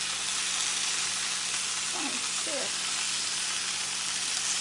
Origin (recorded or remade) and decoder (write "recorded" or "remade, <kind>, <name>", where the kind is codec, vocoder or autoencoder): recorded